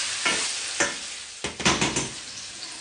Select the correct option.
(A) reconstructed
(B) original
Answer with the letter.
B